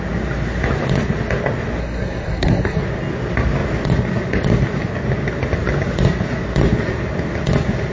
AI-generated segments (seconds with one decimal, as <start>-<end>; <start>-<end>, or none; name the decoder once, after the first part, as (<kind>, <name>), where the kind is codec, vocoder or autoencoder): 1.8-2.8 (codec, SNAC)